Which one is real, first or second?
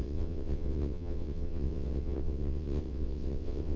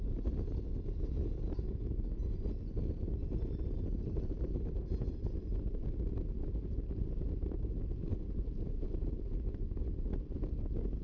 second